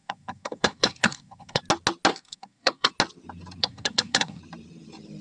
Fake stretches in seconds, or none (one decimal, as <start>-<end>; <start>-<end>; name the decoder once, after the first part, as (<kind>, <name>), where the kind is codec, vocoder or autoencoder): 0.0-1.6 (codec, SNAC); 2.1-2.9; 3.6-4.4